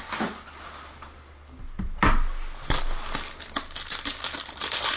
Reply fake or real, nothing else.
real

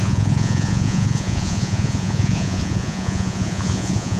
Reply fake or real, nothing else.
fake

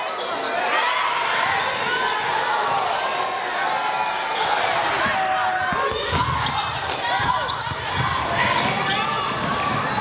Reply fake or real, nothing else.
real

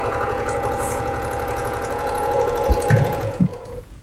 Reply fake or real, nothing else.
fake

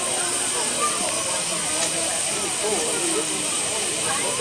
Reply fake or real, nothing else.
real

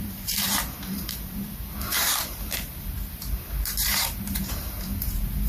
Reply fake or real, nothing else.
fake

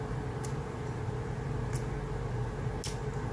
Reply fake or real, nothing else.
real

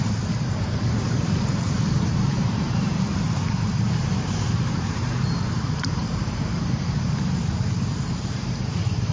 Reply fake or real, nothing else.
fake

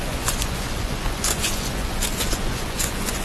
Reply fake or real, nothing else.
fake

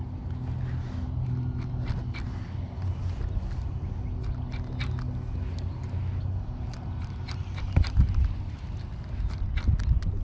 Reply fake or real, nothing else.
real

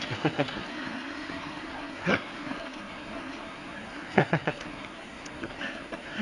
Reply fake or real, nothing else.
fake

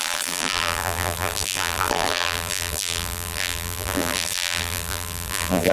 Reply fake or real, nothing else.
fake